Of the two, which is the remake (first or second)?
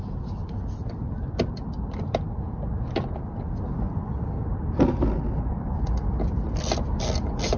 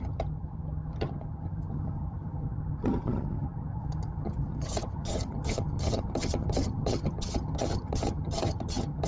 second